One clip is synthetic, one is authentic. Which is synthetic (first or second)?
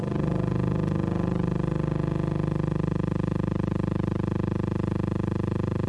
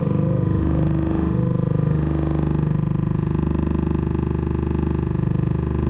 second